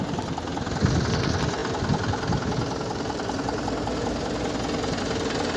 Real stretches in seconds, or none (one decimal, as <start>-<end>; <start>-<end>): 0.0-5.6